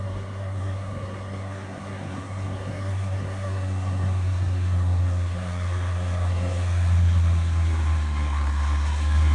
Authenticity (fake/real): fake